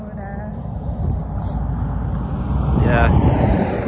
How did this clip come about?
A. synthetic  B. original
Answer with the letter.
B